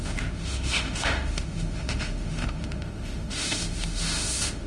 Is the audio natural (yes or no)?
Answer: no